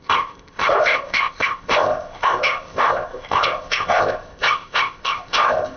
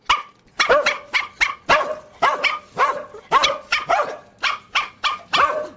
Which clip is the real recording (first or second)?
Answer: second